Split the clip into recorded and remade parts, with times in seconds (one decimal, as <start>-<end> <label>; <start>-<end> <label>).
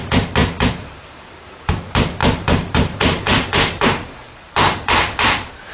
0.0-0.4 recorded; 0.4-1.7 remade; 1.7-2.2 recorded; 2.2-5.2 remade; 5.2-5.7 recorded